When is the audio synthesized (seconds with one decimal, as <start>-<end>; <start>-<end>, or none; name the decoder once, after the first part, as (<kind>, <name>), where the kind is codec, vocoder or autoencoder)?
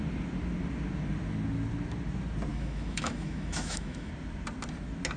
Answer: 2.5-4.1 (autoencoder, DAC-VAE)